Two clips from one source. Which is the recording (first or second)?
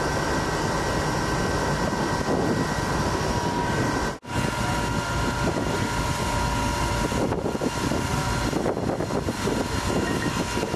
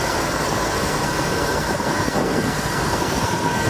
first